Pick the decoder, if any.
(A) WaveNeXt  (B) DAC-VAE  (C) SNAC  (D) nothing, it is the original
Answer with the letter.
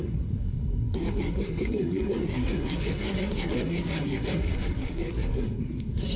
C